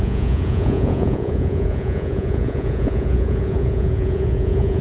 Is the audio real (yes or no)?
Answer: no